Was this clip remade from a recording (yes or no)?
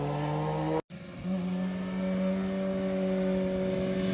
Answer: no